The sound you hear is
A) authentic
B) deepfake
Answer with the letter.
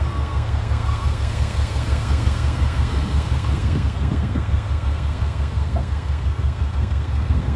B